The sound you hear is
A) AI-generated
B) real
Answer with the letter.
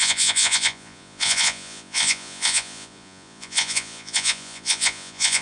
A